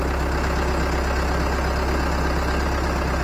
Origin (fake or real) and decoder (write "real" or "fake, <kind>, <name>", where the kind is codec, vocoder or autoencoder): real